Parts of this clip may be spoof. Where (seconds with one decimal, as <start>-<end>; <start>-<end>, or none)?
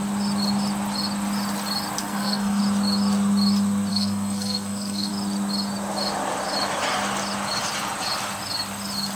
2.0-2.6; 3.9-5.1